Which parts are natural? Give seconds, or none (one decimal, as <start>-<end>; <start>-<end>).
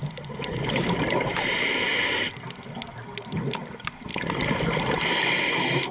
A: 0.0-5.9